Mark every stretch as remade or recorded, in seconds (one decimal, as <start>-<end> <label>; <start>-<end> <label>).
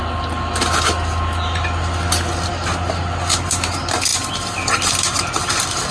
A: 0.0-5.9 recorded